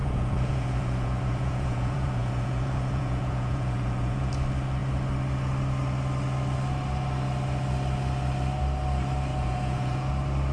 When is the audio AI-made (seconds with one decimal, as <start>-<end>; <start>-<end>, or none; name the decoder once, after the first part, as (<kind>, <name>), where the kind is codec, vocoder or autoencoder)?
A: 0.0-4.3 (vocoder, Vocos); 9.3-10.1